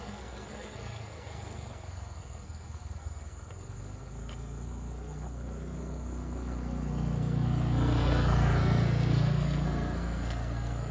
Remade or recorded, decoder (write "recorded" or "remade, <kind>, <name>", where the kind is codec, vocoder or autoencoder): remade, codec, SNAC